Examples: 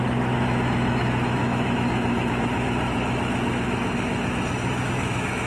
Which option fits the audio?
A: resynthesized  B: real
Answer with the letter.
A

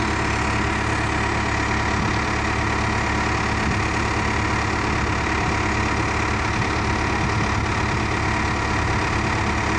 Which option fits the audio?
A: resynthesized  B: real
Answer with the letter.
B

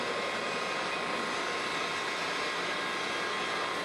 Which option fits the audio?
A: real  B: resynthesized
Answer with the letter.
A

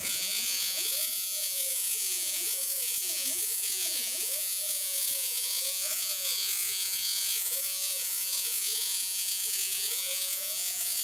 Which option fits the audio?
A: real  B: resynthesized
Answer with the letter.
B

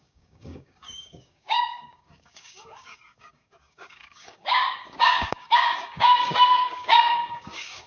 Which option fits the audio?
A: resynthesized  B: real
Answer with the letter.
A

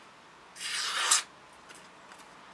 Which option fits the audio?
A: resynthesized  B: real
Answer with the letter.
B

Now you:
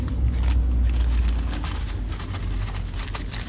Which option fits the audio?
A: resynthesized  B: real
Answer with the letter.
B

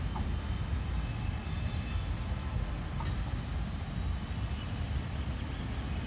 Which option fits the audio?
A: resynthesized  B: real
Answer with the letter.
B